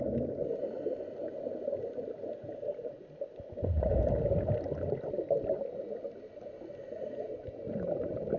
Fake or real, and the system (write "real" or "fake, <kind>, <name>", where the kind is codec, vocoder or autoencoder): real